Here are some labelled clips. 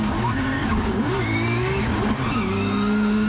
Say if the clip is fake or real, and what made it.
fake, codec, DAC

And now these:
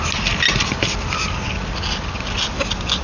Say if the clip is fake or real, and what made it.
real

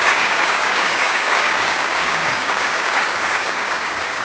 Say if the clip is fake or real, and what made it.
fake, codec, DAC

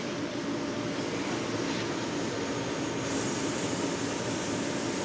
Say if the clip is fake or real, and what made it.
real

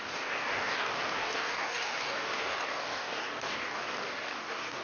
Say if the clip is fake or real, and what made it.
fake, codec, DAC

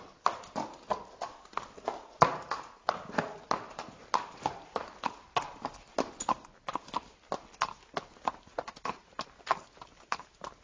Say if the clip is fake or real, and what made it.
real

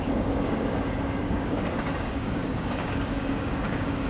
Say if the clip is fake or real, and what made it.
fake, codec, DAC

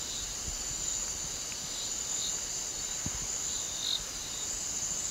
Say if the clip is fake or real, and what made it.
real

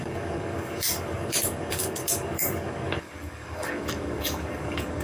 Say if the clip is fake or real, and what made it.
fake, codec, DAC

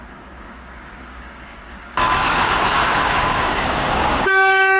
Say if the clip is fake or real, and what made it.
fake, codec, DAC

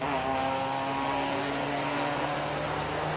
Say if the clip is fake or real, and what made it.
real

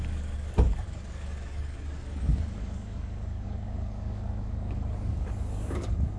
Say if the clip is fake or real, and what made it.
fake, codec, DAC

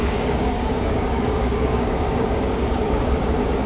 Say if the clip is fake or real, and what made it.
fake, codec, DAC